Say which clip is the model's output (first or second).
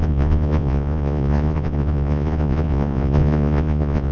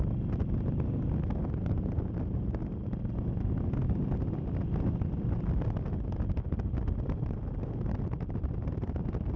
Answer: first